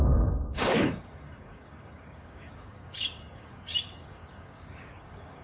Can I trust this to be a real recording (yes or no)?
no